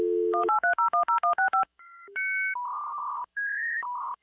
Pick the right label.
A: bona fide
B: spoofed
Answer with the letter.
B